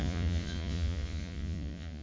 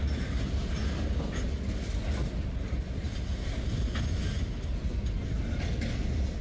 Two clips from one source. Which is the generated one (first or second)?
first